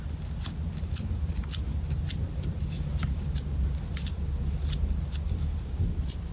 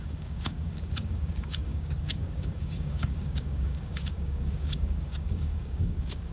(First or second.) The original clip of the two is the first